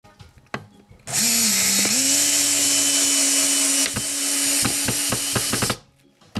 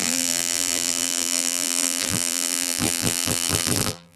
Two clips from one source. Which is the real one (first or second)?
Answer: first